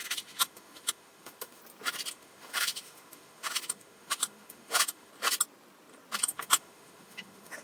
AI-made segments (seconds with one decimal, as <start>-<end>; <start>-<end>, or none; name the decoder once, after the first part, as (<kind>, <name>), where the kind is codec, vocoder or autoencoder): 0.0-1.6 (autoencoder, DAC-VAE); 2.1-5.1; 6.2-7.6